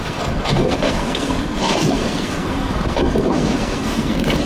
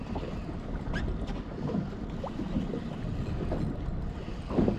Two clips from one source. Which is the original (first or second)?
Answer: second